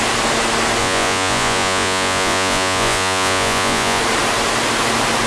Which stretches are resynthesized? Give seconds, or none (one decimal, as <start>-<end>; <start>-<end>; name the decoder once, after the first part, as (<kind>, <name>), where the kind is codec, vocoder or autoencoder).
0.8-4.0 (vocoder, Vocos)